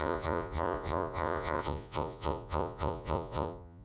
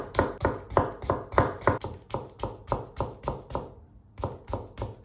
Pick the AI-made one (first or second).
first